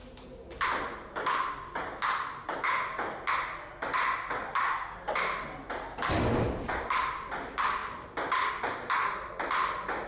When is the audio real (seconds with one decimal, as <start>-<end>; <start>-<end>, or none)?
0.0-10.1